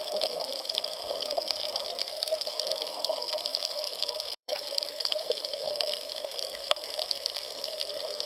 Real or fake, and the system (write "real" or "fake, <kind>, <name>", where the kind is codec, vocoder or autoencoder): fake, codec, SNAC